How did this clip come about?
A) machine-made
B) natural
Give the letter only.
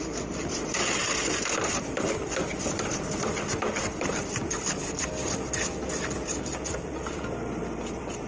A